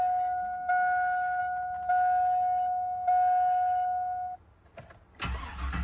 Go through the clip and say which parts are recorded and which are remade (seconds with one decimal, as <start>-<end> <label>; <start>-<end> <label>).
0.0-5.8 recorded